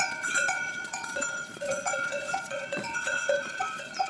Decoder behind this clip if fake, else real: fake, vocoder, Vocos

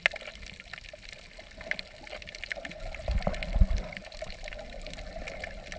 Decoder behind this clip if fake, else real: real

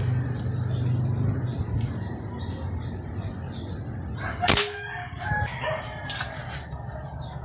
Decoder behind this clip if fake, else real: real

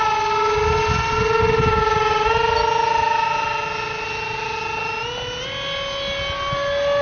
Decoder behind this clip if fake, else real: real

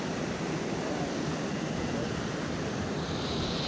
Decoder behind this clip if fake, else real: real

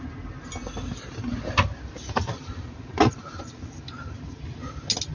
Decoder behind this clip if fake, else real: real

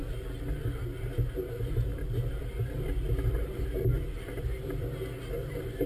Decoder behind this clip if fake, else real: real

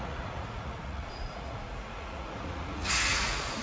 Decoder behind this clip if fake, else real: fake, vocoder, Vocos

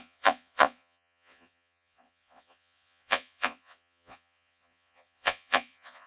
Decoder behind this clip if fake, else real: fake, vocoder, Vocos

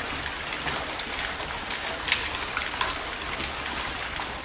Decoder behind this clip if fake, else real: real